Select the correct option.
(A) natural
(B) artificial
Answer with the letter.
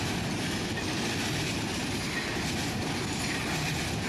A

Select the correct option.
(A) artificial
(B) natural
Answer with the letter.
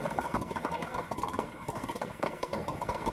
A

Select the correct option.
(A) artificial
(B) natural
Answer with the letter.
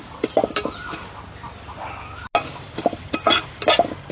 B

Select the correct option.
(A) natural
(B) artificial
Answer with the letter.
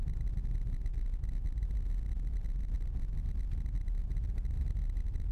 A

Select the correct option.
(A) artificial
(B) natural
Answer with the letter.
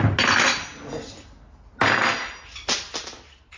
B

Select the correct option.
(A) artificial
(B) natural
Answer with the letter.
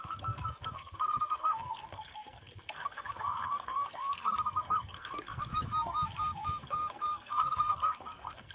A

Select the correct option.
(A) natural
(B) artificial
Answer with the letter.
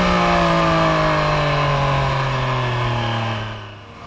A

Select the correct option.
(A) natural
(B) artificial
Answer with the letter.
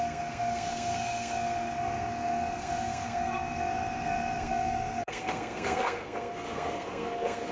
B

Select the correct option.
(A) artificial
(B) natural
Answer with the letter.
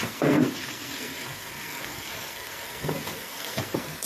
A